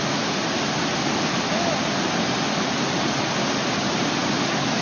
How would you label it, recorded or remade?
recorded